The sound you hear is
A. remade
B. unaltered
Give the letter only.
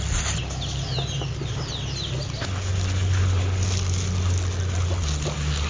B